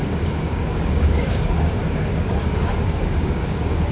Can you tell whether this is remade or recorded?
remade